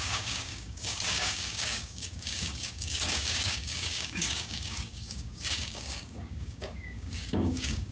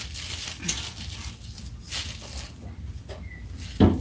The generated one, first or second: first